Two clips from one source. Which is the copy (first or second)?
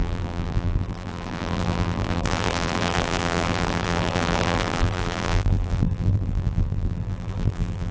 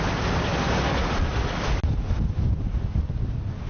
first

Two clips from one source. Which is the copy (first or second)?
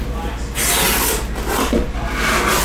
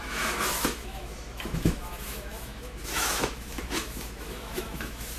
second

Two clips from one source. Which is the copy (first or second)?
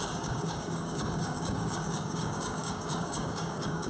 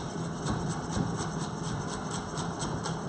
first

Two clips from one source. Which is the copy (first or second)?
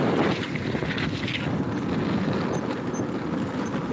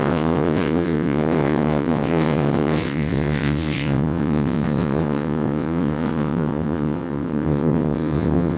second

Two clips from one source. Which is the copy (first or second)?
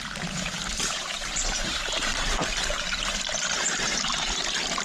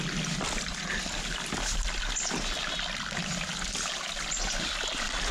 first